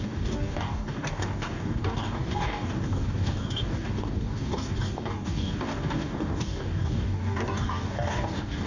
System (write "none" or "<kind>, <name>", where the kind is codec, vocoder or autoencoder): codec, DAC